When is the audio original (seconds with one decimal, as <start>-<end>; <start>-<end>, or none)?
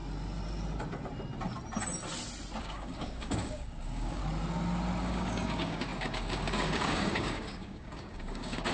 0.0-2.6; 4.2-5.0